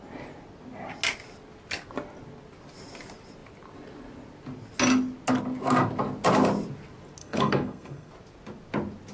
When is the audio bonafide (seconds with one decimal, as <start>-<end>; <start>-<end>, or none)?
0.0-7.2; 8.1-9.1